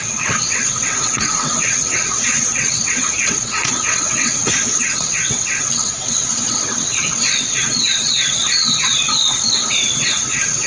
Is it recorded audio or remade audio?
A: remade